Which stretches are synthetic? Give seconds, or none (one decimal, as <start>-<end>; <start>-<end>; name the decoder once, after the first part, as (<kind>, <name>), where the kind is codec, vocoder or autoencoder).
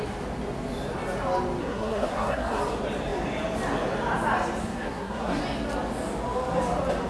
1.6-2.6 (codec, SNAC); 4.6-5.4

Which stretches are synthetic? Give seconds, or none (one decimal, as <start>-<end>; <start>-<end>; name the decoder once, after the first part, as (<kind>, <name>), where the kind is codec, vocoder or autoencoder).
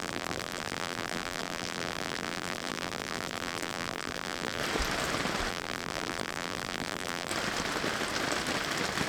0.0-4.6 (vocoder, BigVGAN v2); 5.5-7.3